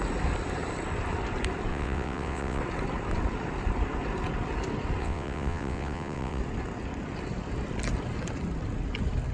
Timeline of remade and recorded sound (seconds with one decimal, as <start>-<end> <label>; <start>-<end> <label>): 0.0-1.7 recorded; 1.7-2.6 remade; 2.6-5.0 recorded; 5.0-6.4 remade; 6.4-9.3 recorded